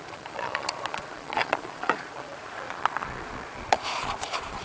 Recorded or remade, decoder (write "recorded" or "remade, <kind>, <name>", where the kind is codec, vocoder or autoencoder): remade, vocoder, Vocos